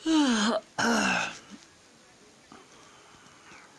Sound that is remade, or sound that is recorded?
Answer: recorded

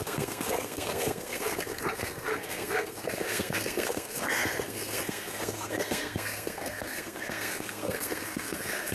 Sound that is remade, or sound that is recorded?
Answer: remade